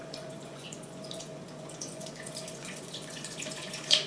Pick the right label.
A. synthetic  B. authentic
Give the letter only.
A